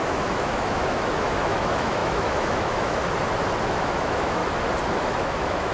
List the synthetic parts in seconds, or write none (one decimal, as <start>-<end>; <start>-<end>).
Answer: 0.0-3.0; 3.6-4.4; 5.0-5.7